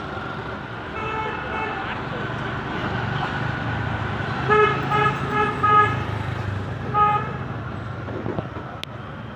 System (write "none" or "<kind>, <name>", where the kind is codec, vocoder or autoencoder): none